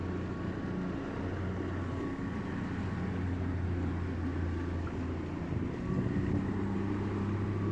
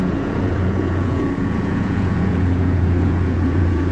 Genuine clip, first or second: first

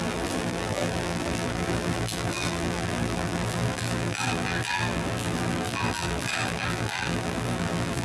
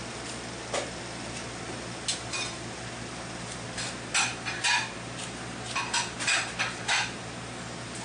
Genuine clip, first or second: second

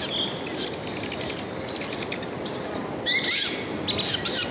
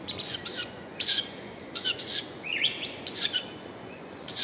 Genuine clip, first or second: first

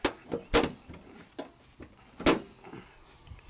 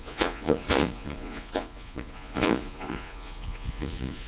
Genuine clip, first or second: first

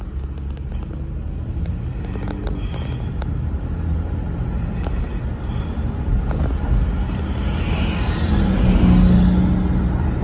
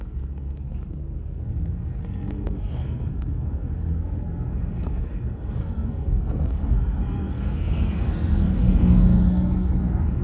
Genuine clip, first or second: first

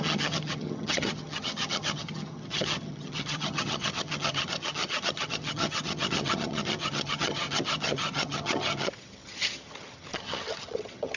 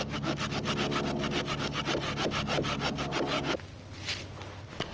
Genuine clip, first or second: second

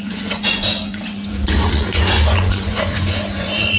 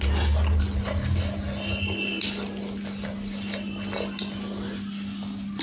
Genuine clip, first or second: second